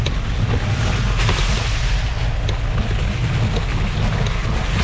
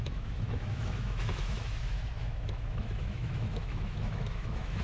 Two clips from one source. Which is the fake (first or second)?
second